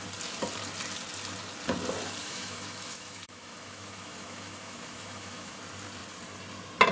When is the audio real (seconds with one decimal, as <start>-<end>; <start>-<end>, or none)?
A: 0.0-2.2; 5.6-6.9